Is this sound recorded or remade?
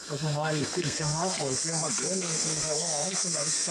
remade